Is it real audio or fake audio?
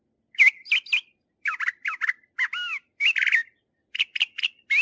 real